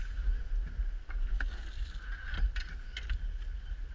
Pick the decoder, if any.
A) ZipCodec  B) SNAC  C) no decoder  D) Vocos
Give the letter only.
C